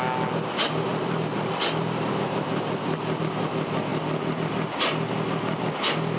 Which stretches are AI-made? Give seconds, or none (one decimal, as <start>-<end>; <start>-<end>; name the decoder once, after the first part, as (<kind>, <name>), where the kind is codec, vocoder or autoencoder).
0.9-3.2 (vocoder, BigVGAN v2)